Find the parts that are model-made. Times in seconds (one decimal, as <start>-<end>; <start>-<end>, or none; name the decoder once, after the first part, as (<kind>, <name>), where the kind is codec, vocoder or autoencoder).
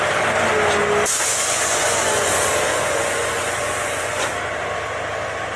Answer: 1.2-2.3 (vocoder, Vocos); 2.7-4.3